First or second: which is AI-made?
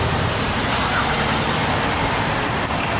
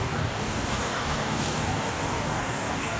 second